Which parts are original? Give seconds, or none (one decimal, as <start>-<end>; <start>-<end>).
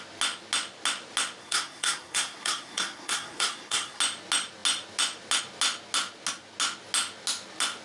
0.0-1.4; 4.0-7.8